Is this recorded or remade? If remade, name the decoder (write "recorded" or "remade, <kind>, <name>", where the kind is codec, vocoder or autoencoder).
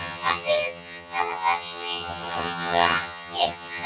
remade, vocoder, HiFi-GAN